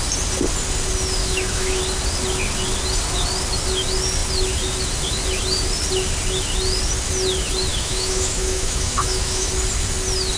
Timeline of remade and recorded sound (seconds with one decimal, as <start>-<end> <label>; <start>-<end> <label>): 0.0-1.2 recorded; 1.2-1.8 remade; 1.8-7.7 recorded; 7.7-9.5 remade; 9.5-10.4 recorded